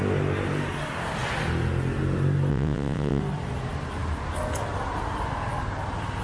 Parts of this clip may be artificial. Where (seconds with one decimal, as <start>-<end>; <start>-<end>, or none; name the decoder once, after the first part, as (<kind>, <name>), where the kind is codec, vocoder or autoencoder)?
2.5-3.2 (vocoder, WaveNeXt)